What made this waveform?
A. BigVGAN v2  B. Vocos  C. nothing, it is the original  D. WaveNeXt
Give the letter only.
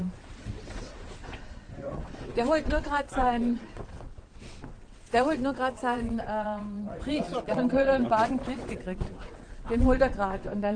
D